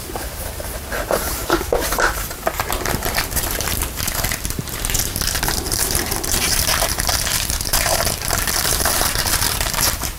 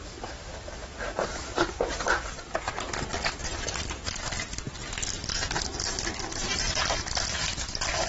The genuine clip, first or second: second